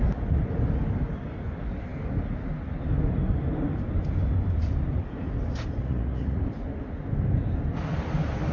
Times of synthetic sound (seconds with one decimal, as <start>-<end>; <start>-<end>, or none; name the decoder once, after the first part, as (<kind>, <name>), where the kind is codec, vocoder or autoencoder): 5.8-6.4 (vocoder, Vocos)